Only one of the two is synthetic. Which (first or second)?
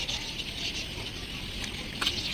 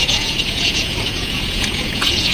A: second